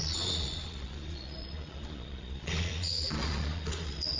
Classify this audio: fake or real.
fake